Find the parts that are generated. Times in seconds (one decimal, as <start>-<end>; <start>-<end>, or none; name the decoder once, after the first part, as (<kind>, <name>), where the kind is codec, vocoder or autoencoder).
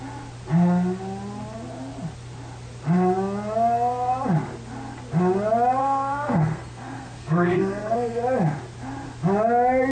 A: 5.8-8.2 (codec, SNAC)